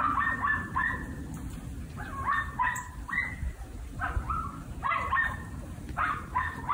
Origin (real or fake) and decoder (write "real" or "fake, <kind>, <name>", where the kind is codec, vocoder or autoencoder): real